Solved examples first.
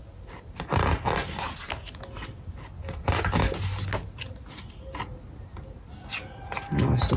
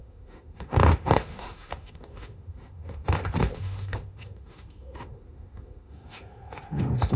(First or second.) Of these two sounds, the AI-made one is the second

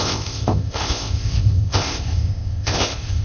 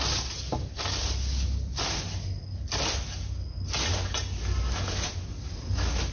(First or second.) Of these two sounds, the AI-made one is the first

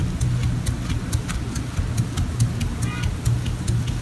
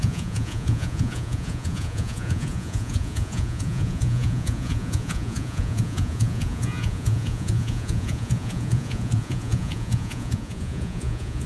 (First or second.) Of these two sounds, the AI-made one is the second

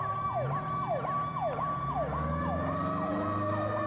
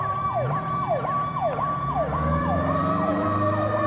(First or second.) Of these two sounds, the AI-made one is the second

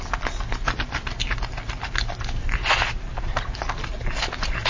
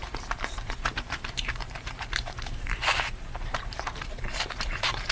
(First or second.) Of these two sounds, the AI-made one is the second